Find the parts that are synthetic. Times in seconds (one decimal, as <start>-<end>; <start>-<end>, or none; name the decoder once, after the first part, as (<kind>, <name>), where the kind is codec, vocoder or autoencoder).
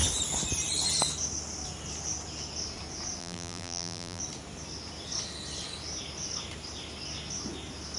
3.2-4.2 (vocoder, BigVGAN v2)